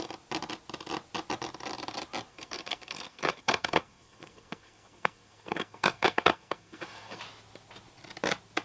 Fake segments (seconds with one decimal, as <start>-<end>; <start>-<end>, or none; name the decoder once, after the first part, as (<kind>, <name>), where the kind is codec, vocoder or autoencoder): 2.3-7.2 (codec, SNAC)